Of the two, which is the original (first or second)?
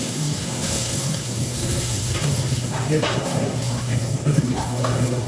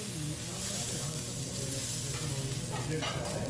second